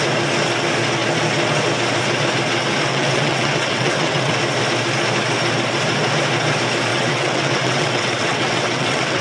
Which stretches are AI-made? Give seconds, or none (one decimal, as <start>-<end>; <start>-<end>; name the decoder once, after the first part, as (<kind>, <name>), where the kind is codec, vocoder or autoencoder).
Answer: 2.9-4.3 (vocoder, WaveNeXt); 6.9-9.2